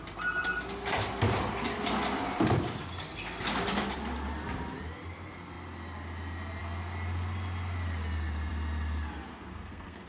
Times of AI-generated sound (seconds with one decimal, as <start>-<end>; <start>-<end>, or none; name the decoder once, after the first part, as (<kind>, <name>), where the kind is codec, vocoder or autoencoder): 9.3-10.1 (codec, SNAC)